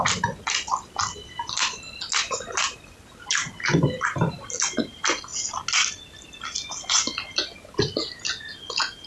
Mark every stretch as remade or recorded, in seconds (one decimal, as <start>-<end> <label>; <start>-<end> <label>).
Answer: 0.0-9.1 recorded